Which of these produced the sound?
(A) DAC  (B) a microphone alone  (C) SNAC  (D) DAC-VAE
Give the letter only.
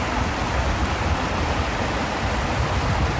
B